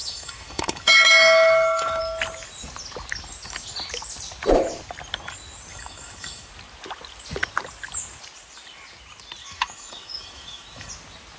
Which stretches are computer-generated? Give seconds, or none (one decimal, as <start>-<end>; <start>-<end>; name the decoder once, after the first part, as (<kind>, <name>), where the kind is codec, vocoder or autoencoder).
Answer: 0.0-2.0 (autoencoder, DAC-VAE); 5.7-6.5; 9.4-10.9